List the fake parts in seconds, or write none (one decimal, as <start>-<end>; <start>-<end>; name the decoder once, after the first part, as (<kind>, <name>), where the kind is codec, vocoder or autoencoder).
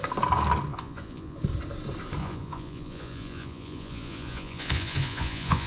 0.7-1.4 (vocoder, Vocos); 2.2-5.7